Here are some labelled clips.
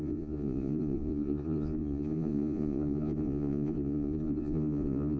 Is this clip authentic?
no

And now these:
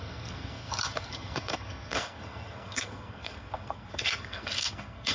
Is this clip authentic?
no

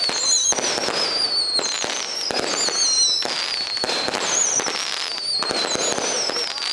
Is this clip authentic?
yes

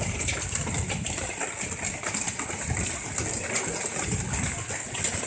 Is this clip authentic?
yes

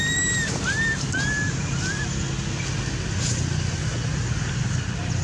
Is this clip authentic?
yes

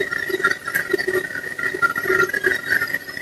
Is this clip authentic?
yes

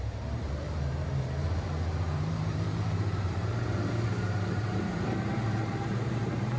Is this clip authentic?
no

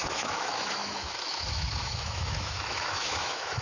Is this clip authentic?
no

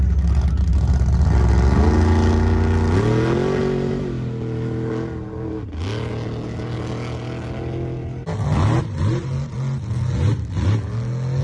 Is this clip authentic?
yes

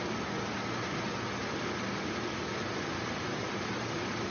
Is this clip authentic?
yes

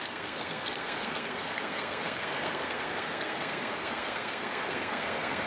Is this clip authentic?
no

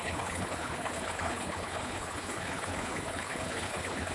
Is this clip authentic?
no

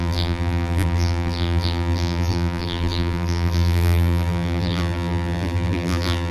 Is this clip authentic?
no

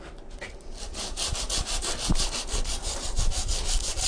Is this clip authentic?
yes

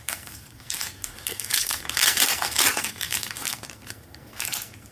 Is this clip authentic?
no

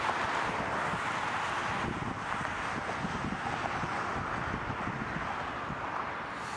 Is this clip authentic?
yes